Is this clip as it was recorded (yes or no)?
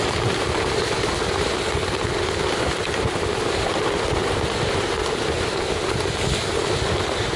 yes